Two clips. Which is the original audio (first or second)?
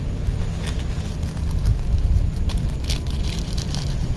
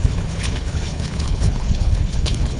first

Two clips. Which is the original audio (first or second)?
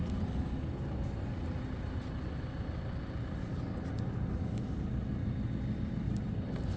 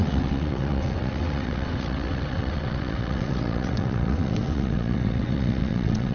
first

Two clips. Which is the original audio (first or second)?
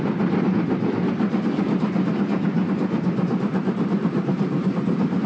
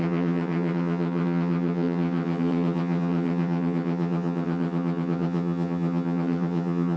first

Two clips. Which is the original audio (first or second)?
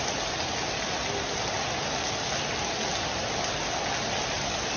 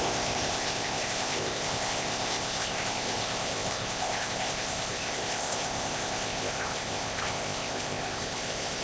first